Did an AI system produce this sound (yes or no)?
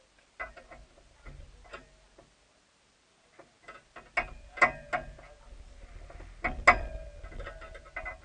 no